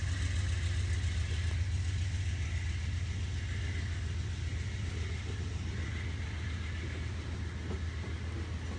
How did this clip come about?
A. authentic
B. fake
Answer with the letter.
A